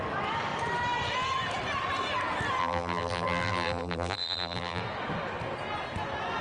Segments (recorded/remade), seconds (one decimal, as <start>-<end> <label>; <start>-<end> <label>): 0.0-2.6 recorded; 2.6-4.8 remade; 4.8-6.4 recorded